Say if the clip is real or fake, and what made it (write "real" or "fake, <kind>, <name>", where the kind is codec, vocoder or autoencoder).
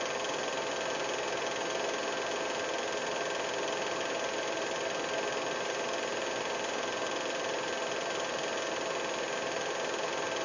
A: real